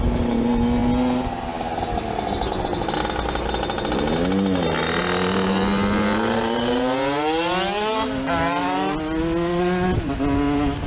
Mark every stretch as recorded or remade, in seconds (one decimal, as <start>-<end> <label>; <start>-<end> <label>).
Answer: 0.0-10.9 recorded

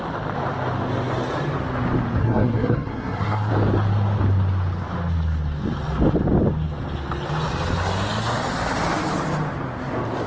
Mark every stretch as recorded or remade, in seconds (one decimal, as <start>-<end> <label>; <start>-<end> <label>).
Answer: 0.0-2.2 recorded; 2.2-3.5 remade; 3.5-10.3 recorded

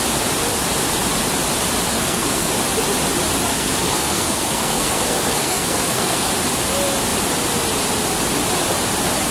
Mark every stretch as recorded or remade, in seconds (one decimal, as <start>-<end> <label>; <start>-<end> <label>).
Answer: 0.0-1.9 recorded; 1.9-2.5 remade; 2.5-3.5 recorded; 3.5-6.3 remade; 6.3-9.3 recorded

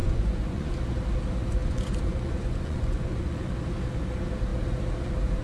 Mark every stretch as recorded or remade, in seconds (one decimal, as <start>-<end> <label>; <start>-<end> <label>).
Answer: 0.0-0.7 remade; 0.7-1.6 recorded; 1.6-3.5 remade; 3.5-5.4 recorded

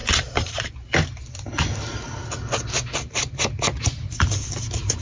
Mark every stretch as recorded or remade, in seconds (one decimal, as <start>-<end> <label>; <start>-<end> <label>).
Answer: 0.0-1.1 remade; 1.1-3.7 recorded; 3.7-5.0 remade

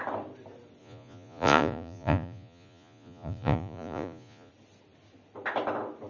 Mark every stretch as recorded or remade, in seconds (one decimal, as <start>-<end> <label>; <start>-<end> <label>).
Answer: 0.0-0.8 recorded; 0.8-4.5 remade; 4.5-6.1 recorded